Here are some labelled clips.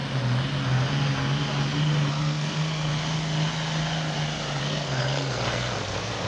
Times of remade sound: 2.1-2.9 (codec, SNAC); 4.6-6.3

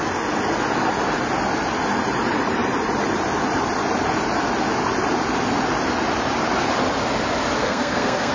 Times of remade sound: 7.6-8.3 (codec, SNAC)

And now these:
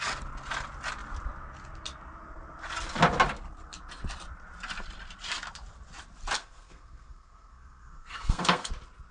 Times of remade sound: 6.4-8.7 (codec, SNAC)